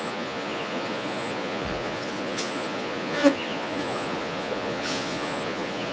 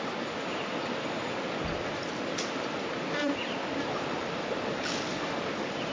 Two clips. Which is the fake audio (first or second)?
first